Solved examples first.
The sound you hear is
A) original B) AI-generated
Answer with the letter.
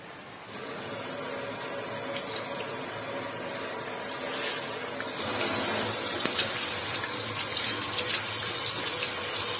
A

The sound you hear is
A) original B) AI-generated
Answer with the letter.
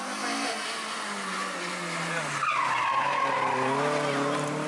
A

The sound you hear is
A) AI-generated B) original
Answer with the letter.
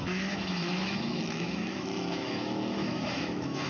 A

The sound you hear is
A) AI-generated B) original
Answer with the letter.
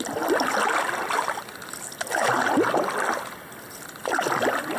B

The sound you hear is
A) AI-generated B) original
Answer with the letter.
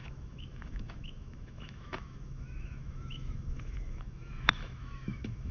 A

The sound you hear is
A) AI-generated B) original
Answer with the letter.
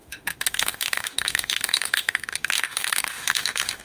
A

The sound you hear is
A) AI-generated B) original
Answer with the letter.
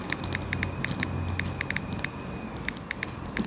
B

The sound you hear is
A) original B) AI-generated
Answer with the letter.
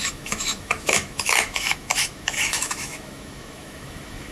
B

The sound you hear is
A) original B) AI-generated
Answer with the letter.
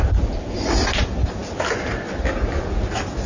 A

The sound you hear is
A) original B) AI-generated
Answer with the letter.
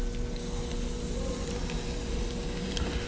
A